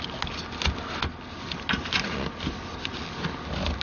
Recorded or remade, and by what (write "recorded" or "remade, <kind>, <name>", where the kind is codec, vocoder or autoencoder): recorded